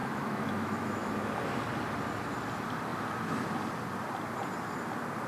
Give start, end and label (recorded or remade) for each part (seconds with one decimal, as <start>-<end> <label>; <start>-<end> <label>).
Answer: 0.0-1.3 remade; 1.3-5.3 recorded